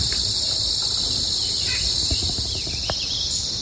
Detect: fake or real real